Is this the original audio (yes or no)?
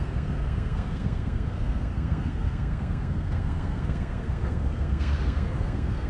no